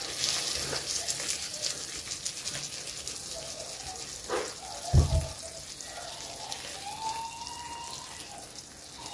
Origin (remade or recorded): recorded